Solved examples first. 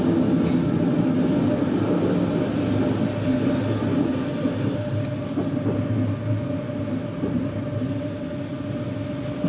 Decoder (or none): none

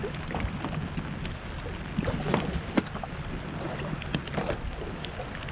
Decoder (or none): none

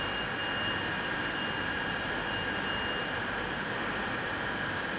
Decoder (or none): none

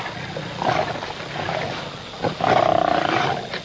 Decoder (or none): none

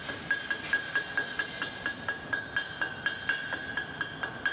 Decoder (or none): none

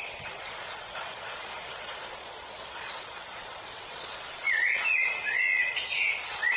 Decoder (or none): vocoder, Vocos